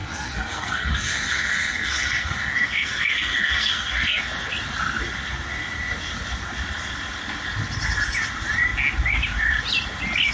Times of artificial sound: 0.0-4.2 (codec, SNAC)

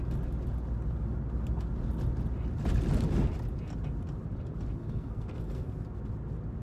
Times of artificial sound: 4.8-5.7 (codec, SNAC)

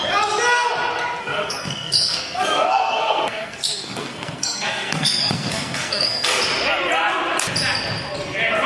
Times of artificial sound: 1.2-6.4 (codec, SNAC)

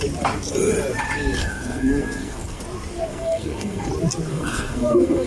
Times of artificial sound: 1.4-2.6 (codec, SNAC); 3.1-3.9; 4.3-5.3

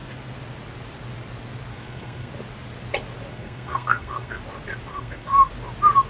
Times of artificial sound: 1.7-2.3 (codec, SNAC); 3.3-4.4; 4.9-5.5

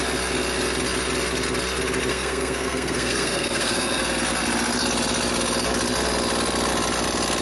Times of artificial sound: 2.1-4.0 (codec, SNAC)